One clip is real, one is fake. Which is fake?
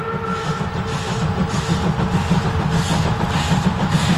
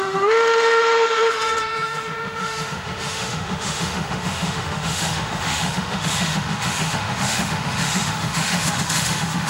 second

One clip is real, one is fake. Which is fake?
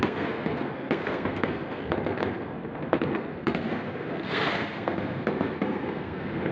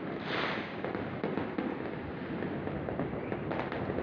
first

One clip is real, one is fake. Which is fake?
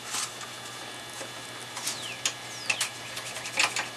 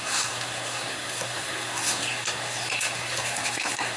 second